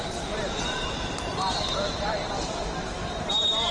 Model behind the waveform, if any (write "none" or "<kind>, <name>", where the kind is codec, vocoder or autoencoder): vocoder, BigVGAN v2